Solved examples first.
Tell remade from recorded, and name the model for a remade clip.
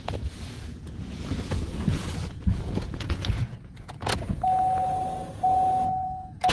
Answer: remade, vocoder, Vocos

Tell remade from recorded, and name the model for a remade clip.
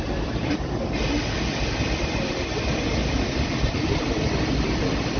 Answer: recorded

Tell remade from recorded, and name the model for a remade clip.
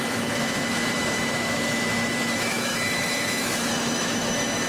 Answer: remade, autoencoder, DAC-VAE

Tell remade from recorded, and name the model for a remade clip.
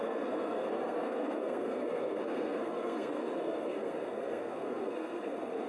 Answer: remade, codec, SNAC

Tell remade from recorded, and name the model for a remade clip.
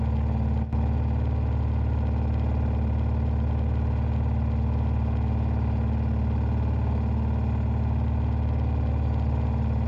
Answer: recorded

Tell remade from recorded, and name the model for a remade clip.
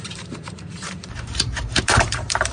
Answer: remade, vocoder, BigVGAN v2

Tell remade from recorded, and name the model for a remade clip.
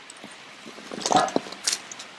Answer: recorded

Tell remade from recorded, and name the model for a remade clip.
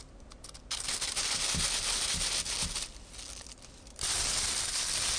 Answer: recorded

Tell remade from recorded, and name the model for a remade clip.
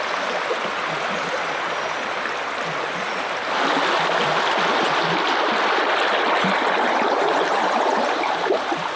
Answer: recorded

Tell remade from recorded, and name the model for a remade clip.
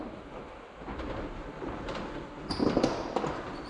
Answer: remade, vocoder, BigVGAN v2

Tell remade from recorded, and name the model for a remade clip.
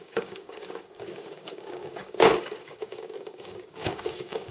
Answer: remade, codec, DAC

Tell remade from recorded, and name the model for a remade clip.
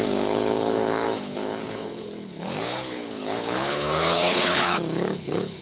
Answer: remade, codec, HILCodec